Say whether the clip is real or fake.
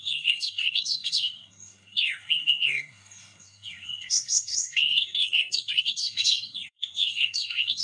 fake